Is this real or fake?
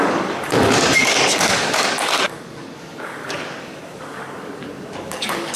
fake